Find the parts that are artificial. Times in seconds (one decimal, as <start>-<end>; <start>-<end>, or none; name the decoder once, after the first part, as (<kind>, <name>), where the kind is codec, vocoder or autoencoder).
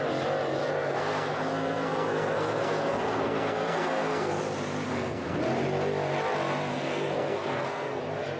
0.6-4.4 (codec, SNAC); 4.9-5.4; 6.7-8.0